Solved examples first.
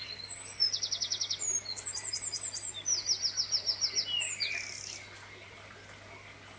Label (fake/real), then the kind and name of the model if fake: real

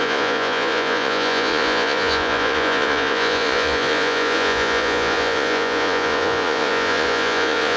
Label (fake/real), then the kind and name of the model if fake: fake, vocoder, Vocos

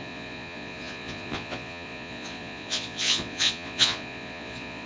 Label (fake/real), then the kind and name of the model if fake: fake, vocoder, Vocos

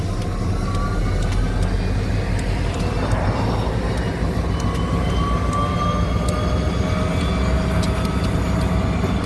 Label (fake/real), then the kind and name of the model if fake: real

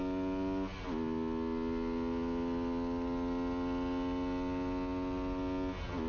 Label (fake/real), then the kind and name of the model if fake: real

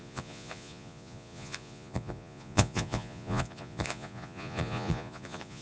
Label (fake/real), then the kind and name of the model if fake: fake, vocoder, Vocos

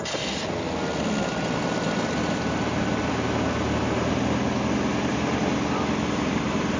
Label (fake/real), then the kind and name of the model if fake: real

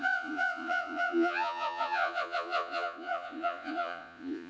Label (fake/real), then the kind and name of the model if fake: fake, vocoder, Vocos